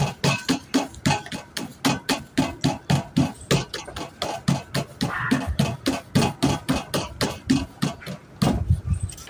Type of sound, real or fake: real